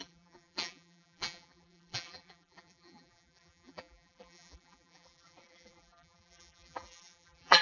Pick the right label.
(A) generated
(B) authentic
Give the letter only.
A